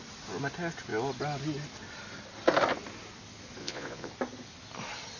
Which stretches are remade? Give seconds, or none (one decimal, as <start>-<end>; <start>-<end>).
3.6-4.1